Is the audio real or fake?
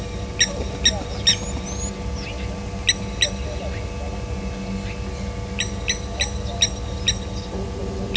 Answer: real